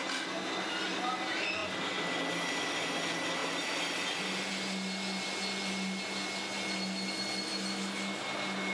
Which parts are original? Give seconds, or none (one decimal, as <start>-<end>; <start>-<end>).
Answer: 0.0-8.7